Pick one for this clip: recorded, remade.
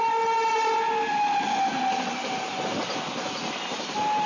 recorded